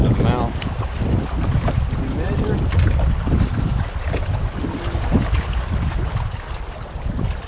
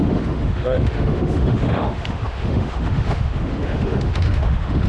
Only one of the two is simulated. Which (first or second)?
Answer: second